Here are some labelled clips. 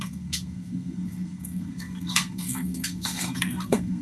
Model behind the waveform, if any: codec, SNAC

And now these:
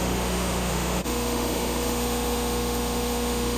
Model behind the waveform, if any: autoencoder, DAC-VAE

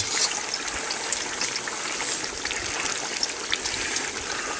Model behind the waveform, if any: none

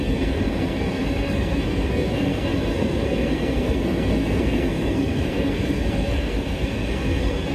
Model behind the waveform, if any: codec, SNAC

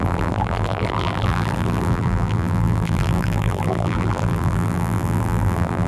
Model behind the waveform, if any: vocoder, BigVGAN v2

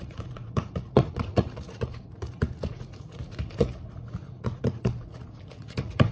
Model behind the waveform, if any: vocoder, Vocos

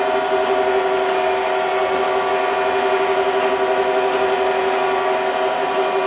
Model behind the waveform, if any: none